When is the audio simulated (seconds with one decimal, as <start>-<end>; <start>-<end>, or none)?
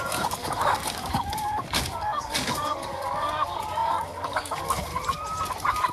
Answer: 0.0-4.9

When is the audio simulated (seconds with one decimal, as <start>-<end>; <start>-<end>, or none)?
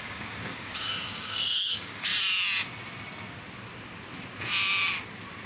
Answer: 0.0-2.1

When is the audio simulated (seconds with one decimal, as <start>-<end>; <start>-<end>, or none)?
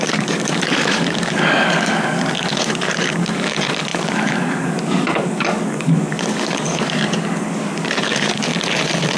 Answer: 0.0-8.5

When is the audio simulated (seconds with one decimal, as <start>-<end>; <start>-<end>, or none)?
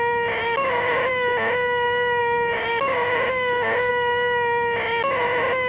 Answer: 0.4-1.1; 2.2-3.9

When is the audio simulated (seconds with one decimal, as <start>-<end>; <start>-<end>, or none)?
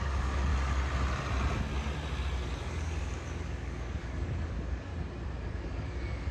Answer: 0.0-0.5; 2.6-4.9; 5.5-6.3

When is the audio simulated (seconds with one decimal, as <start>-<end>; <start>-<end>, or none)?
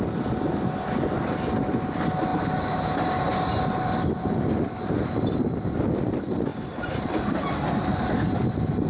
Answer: none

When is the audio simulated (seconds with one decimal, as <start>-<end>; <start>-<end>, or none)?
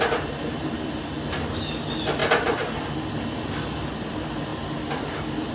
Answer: none